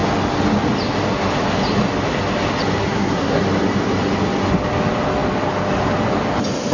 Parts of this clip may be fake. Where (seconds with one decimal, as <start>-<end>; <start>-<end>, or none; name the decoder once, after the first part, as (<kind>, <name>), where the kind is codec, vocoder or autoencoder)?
2.8-3.4 (codec, SNAC)